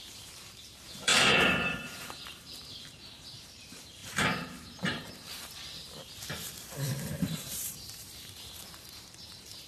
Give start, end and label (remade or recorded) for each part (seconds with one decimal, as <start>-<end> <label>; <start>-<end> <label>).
0.0-6.0 remade; 6.0-6.9 recorded; 6.9-9.7 remade

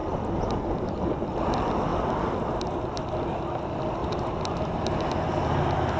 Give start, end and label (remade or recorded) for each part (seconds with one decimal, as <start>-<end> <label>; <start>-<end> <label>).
0.0-4.0 recorded; 4.0-5.6 remade; 5.6-6.0 recorded

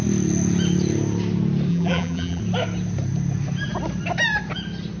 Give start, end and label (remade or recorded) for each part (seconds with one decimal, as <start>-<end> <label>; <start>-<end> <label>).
0.0-1.7 recorded; 1.7-2.4 remade; 2.4-5.0 recorded